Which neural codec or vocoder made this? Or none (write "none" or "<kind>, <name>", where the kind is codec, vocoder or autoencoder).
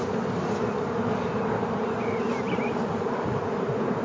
vocoder, BigVGAN v2